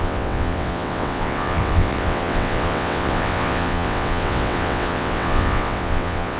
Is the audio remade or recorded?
remade